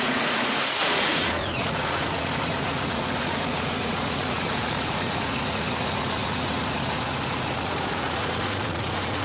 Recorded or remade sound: remade